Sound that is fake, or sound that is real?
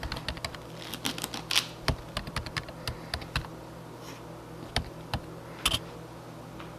real